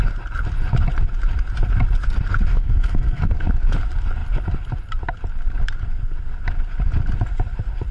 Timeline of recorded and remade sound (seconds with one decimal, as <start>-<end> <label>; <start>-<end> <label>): 0.0-2.5 recorded; 2.5-3.5 remade; 3.5-7.9 recorded